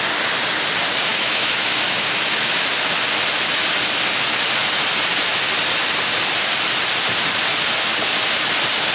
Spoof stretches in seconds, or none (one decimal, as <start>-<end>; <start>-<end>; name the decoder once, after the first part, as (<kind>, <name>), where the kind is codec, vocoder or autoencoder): 1.1-2.7 (autoencoder, DAC-VAE)